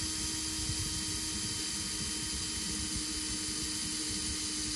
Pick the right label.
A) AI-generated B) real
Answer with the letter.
B